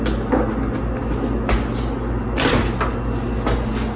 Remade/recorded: recorded